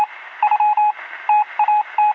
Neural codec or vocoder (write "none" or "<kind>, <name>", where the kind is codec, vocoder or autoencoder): none